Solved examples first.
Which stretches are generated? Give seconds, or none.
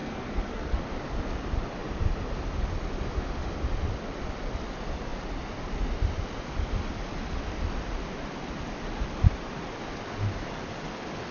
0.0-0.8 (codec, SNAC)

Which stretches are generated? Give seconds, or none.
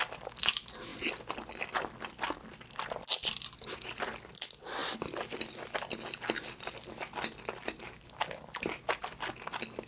none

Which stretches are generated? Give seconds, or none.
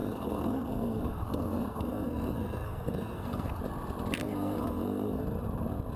0.0-3.6 (codec, SNAC); 4.2-5.2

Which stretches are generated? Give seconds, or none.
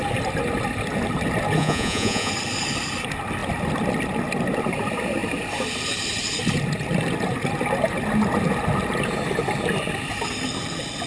1.6-2.3 (vocoder, Vocos)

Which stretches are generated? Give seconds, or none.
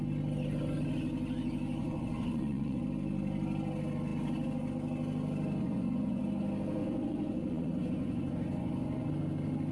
1.8-2.8 (vocoder, Vocos); 5.6-6.2; 6.8-9.1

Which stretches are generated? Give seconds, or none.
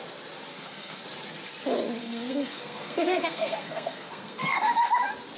0.5-1.0 (codec, SNAC); 2.0-4.9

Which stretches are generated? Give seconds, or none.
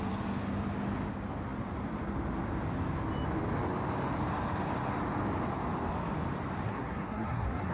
6.7-7.7 (codec, SNAC)